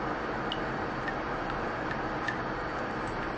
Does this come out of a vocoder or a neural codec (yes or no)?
no